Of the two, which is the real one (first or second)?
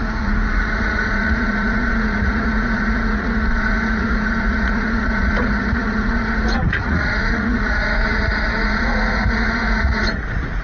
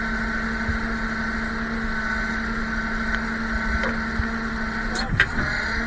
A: second